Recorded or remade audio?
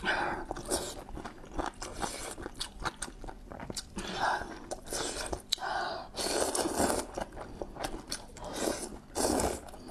recorded